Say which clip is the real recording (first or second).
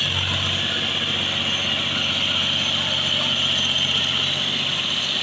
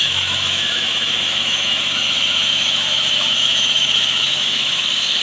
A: first